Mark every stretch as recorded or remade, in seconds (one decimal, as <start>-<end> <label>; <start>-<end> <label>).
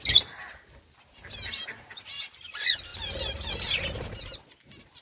0.0-5.0 recorded